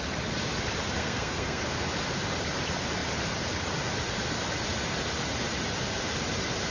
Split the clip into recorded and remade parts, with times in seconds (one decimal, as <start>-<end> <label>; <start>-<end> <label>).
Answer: 0.0-1.0 recorded; 1.0-1.6 remade; 1.6-6.7 recorded